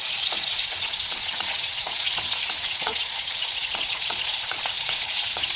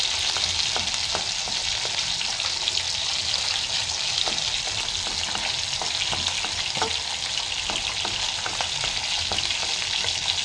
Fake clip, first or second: first